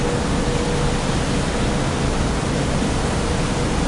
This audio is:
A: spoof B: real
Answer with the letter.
B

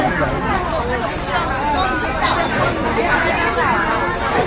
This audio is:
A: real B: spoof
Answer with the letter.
A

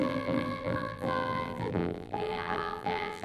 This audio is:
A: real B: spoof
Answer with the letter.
B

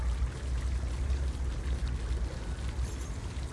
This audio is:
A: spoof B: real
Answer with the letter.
B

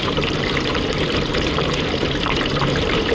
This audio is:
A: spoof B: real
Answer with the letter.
A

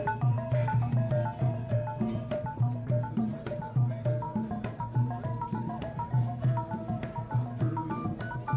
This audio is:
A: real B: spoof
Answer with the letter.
B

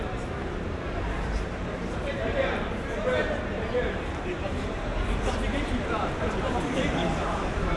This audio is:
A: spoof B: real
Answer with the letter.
A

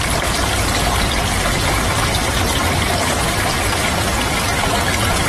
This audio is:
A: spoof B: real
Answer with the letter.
A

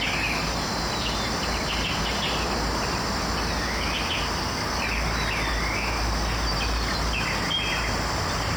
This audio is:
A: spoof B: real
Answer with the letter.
B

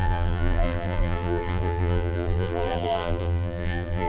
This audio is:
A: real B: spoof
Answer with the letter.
B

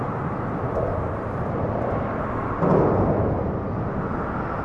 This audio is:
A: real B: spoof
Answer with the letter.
A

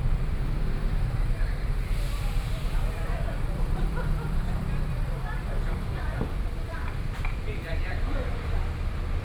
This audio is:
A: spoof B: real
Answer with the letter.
A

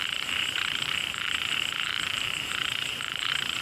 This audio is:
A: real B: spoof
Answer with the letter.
B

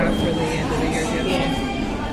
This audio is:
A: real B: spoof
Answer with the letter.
B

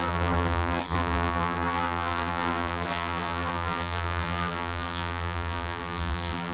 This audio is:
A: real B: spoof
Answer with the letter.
B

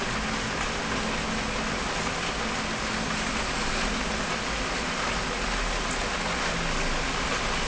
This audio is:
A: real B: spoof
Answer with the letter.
A